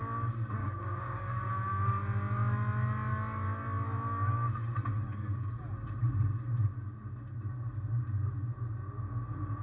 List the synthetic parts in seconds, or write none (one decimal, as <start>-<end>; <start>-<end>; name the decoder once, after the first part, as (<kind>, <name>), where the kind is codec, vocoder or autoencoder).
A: 0.6-1.5 (codec, DAC); 4.9-5.6